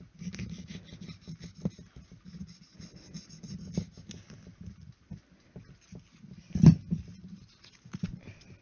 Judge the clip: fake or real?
real